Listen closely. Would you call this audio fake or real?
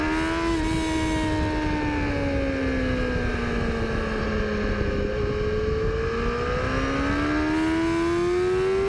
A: real